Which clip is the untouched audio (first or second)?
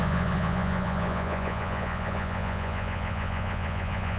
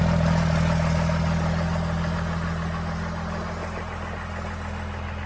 second